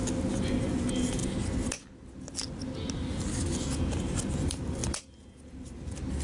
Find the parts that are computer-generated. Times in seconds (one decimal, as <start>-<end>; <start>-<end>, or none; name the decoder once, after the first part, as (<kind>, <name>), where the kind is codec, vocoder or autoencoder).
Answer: 0.5-1.2 (vocoder, BigVGAN v2); 3.9-4.8; 5.4-6.2